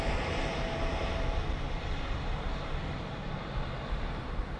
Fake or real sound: real